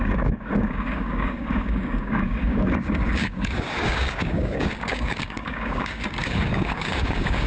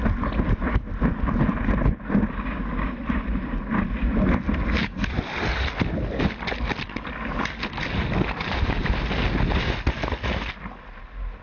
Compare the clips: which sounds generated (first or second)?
first